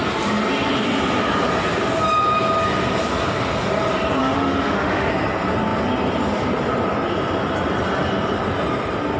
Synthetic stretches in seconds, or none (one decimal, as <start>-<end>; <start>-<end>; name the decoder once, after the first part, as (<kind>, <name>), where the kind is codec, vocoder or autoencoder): 4.2-5.1 (autoencoder, DAC-VAE)